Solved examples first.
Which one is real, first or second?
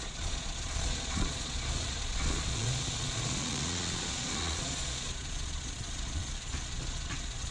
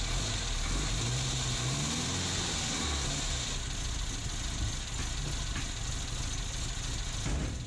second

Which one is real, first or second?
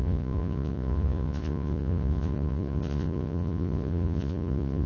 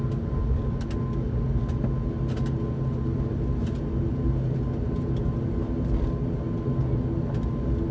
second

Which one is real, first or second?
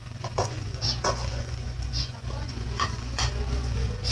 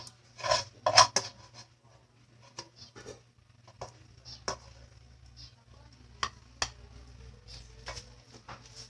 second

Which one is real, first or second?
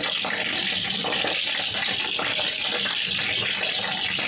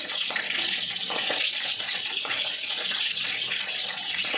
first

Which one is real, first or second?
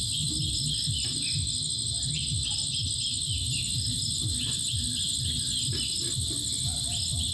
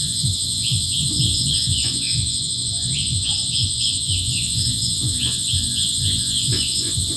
first